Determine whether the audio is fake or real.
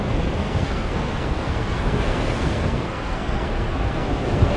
fake